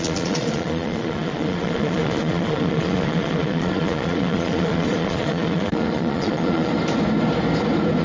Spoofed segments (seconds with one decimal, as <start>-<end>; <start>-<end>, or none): 0.0-6.7